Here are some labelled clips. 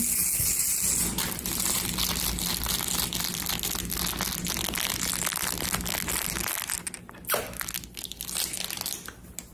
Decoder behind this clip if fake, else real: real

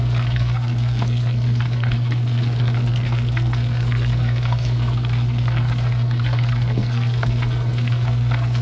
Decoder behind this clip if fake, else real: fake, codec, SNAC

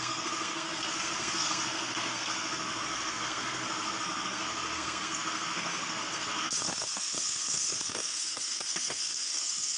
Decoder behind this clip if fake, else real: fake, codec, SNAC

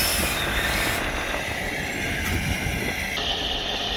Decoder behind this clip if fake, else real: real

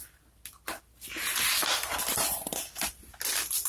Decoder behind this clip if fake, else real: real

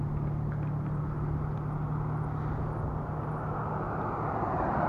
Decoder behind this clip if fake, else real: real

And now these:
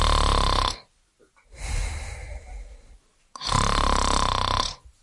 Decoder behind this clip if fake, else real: real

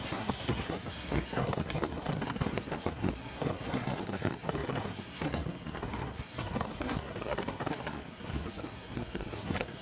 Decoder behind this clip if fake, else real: fake, codec, SNAC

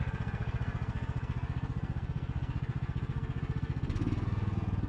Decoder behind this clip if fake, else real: fake, codec, SNAC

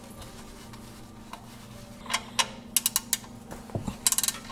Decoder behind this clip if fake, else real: real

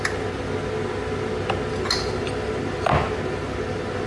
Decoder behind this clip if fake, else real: real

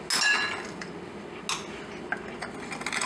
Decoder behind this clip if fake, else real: real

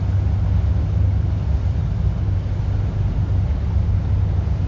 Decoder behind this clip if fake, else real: real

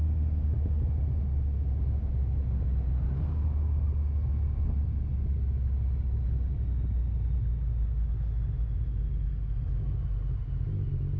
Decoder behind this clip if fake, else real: real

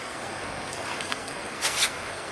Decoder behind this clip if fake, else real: fake, codec, SNAC